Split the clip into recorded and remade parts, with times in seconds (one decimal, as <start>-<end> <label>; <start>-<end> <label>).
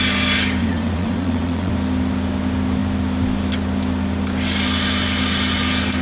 0.0-0.6 recorded; 0.6-1.7 remade; 1.7-6.0 recorded